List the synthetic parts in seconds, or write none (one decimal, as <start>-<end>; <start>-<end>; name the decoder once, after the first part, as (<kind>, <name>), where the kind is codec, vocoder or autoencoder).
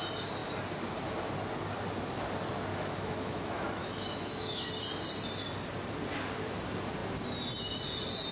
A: 2.7-4.7 (autoencoder, DAC-VAE)